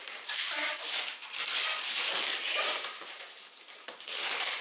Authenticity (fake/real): fake